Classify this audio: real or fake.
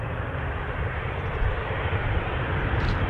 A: fake